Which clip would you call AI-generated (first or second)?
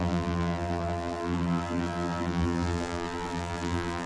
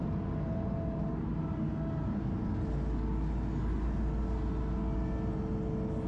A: first